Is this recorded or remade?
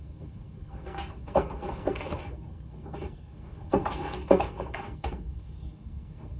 remade